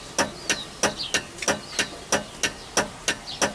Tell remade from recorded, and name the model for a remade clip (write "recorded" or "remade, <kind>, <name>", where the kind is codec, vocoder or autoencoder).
recorded